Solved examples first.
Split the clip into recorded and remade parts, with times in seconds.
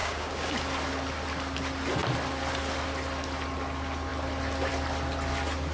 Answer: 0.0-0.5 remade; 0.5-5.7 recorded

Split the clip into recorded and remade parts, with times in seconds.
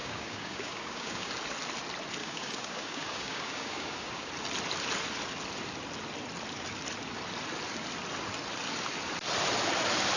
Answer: 0.0-1.3 remade; 1.3-2.2 recorded; 2.2-4.3 remade; 4.3-10.2 recorded